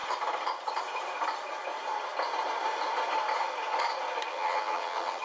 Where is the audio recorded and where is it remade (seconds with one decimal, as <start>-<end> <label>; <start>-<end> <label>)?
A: 0.0-4.3 recorded; 4.3-5.2 remade